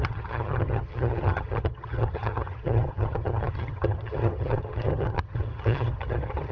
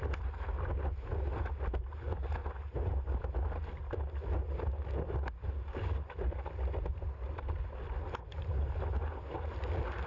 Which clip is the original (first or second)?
second